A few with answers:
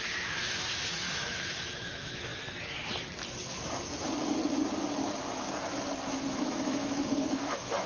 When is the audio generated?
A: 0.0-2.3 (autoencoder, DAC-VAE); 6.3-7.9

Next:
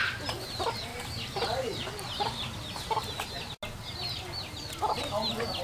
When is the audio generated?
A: 0.9-3.3 (vocoder, BigVGAN v2)

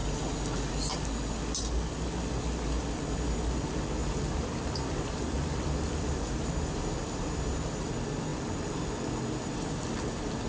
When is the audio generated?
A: 4.0-7.9 (vocoder, BigVGAN v2); 8.3-8.8

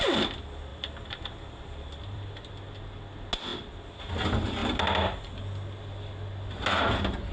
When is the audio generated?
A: 0.7-2.5 (vocoder, BigVGAN v2); 3.5-4.0

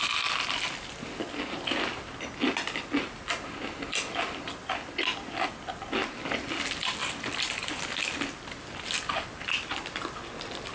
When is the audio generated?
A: 7.0-7.7 (vocoder, BigVGAN v2)

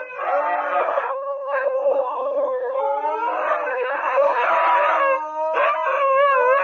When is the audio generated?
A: 0.8-2.8 (codec, SNAC); 3.7-4.5

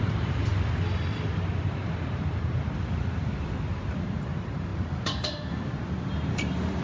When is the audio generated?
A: 0.0-0.5 (vocoder, BigVGAN v2); 2.8-6.8